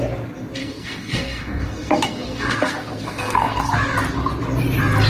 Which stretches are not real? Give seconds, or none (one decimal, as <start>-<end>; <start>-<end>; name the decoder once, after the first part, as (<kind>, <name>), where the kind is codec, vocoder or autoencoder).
0.6-3.7 (codec, SNAC)